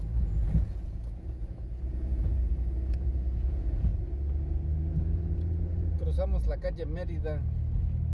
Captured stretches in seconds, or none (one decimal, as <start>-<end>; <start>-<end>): 3.9-8.1